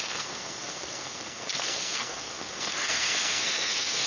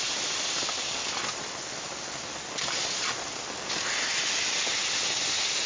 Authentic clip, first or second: second